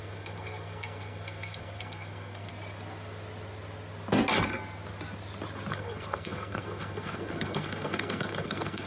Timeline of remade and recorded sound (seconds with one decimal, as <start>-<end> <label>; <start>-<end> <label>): 0.0-2.5 remade; 2.5-5.7 recorded; 5.7-8.9 remade